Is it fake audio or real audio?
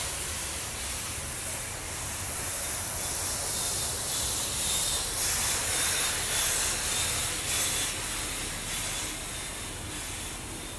real